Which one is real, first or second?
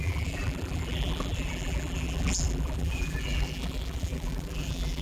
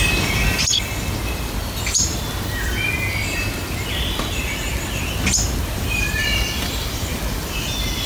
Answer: second